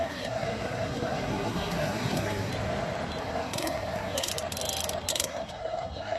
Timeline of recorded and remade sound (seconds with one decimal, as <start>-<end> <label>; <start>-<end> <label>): 0.0-2.5 remade; 2.5-3.2 recorded; 3.2-4.3 remade; 4.3-5.1 recorded; 5.1-6.2 remade